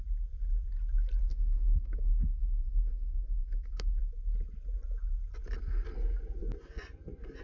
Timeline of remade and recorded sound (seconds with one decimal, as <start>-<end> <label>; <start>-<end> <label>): 0.0-1.3 recorded; 1.3-4.0 remade; 4.0-7.4 recorded